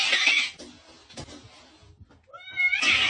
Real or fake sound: real